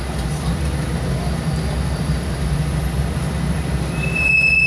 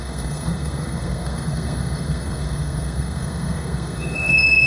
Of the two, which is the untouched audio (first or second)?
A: first